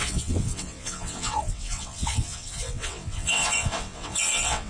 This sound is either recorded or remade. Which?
remade